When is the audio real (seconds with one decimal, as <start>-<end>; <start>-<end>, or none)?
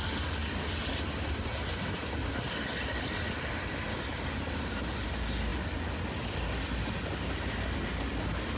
0.0-8.6